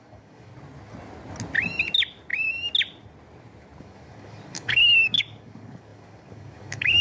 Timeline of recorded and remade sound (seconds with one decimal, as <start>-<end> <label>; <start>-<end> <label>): 0.0-0.5 remade; 0.5-3.8 recorded; 3.8-7.0 remade